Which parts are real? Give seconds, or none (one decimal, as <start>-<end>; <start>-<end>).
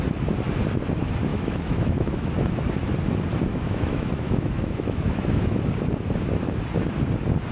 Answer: 0.0-1.3; 2.3-3.5; 5.6-7.5